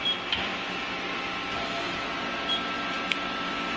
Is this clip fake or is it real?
real